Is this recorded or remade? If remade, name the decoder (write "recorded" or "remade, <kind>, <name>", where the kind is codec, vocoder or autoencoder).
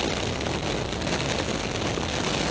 recorded